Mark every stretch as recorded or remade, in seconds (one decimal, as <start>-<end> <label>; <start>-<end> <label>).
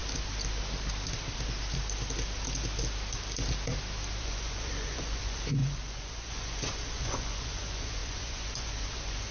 0.0-4.2 recorded; 4.2-9.3 remade